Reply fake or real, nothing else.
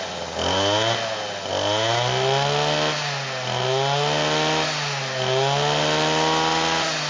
real